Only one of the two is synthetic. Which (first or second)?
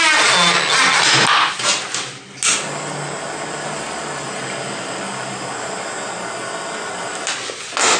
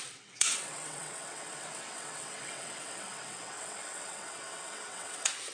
second